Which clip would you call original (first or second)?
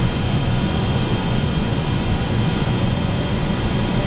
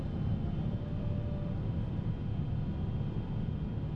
second